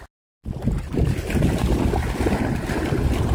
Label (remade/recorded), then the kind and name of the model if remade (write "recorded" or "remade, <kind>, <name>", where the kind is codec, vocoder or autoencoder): recorded